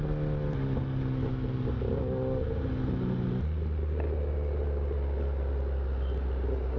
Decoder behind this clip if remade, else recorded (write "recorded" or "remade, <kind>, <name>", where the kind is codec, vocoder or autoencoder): recorded